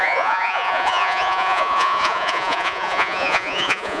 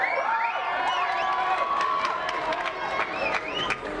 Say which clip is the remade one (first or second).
first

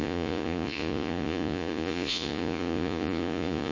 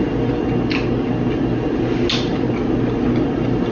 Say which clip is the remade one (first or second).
first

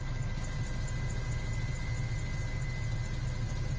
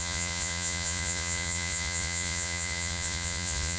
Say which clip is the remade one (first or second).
second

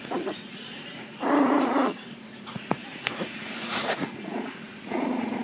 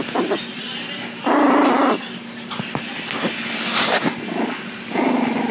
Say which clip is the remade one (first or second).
first